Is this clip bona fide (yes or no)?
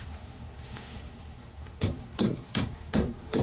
no